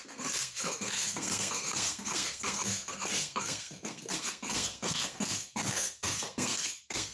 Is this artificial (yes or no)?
yes